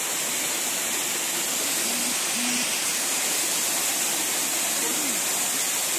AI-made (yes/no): no